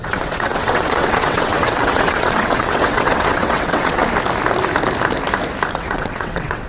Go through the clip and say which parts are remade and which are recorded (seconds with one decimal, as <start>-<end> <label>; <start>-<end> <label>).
0.0-4.0 remade; 4.0-5.7 recorded; 5.7-6.7 remade